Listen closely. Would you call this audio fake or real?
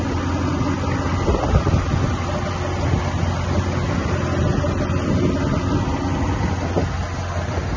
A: real